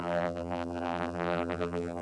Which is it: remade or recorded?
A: remade